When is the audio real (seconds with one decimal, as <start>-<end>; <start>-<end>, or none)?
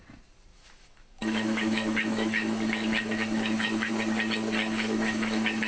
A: 0.0-0.5; 3.9-4.6